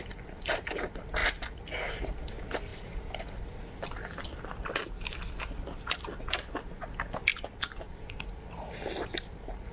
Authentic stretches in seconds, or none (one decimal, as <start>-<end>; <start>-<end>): 1.2-2.0